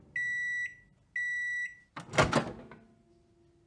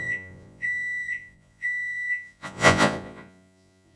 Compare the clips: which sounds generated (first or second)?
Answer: second